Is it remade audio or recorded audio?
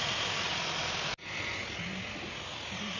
recorded